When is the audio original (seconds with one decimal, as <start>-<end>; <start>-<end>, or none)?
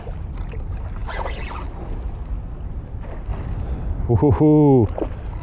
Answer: 0.0-2.2; 2.8-5.4